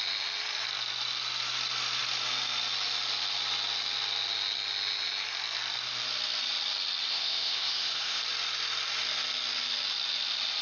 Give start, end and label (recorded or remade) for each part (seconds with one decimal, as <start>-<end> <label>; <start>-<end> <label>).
0.0-7.1 recorded; 7.1-8.2 remade; 8.2-10.6 recorded